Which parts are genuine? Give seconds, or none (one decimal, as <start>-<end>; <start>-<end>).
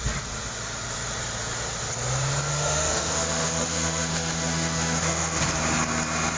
0.0-2.5; 5.4-6.4